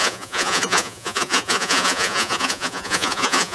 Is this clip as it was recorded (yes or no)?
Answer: no